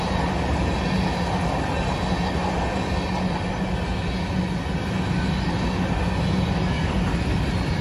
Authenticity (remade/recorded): recorded